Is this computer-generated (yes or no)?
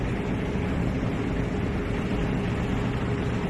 no